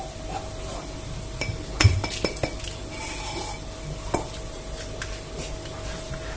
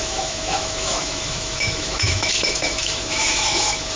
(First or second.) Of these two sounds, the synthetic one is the second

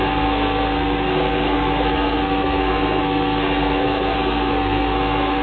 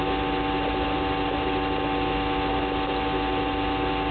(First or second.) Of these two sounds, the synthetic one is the first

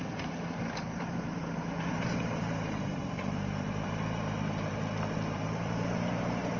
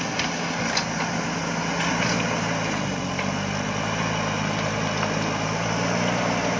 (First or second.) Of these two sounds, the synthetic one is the first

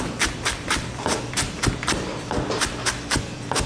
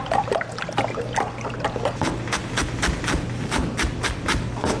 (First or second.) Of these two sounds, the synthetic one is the first